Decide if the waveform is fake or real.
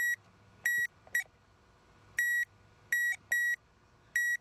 real